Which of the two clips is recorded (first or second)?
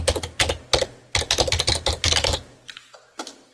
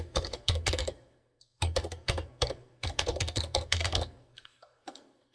first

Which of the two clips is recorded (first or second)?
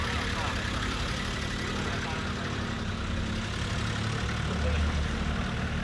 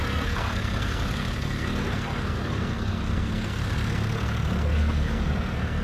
first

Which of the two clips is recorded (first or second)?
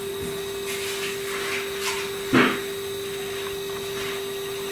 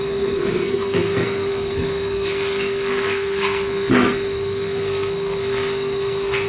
first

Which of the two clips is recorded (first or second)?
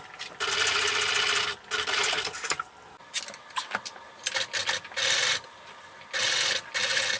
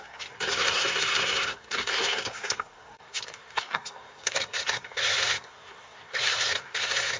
first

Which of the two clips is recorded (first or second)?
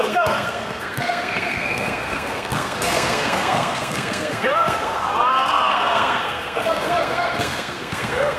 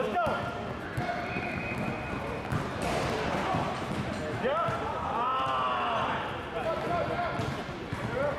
second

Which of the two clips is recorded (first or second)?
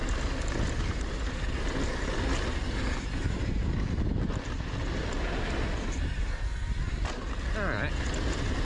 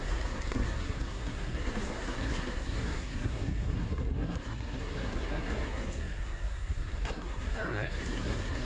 first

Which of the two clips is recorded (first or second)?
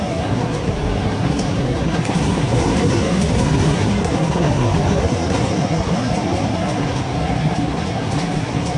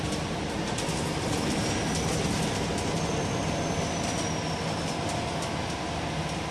second